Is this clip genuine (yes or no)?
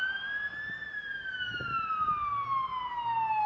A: yes